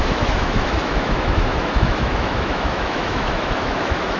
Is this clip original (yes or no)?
no